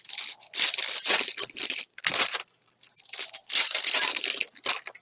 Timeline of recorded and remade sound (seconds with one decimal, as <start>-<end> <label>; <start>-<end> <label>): 0.0-1.9 recorded; 1.9-5.0 remade

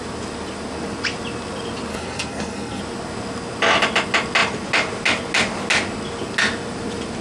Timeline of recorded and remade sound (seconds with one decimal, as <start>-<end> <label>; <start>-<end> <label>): 0.0-1.9 recorded; 1.9-2.8 remade; 2.8-7.2 recorded

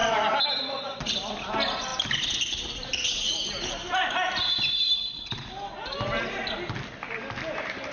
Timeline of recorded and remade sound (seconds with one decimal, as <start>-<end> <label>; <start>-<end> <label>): 0.0-7.9 recorded